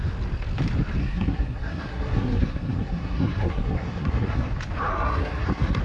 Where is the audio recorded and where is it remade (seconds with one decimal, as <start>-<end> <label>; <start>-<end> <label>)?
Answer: 0.0-1.0 recorded; 1.0-4.5 remade; 4.5-4.9 recorded; 4.9-5.8 remade